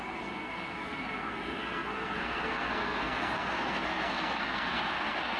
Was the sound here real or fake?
fake